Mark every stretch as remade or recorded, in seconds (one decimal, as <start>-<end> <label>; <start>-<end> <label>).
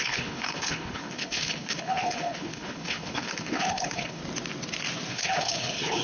0.0-4.2 remade; 4.2-5.1 recorded; 5.1-6.0 remade